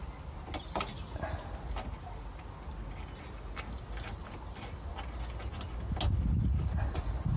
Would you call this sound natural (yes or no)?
yes